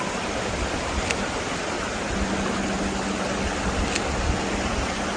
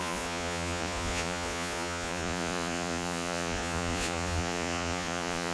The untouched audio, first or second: first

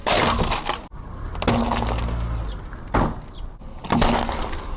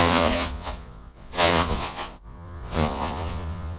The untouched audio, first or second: first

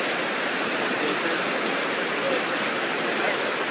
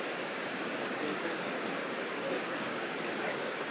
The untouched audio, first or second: first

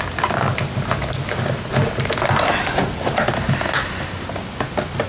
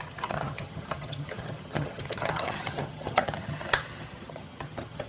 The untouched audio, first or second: first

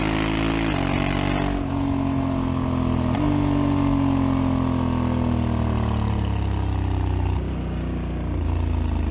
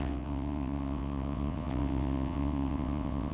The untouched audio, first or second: first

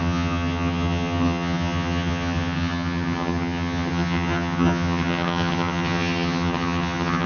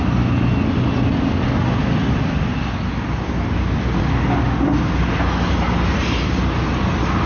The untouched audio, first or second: second